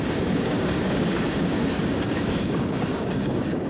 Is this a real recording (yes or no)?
no